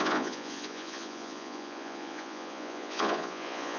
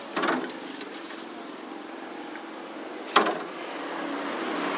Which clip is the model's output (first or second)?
first